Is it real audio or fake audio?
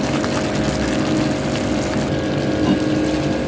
real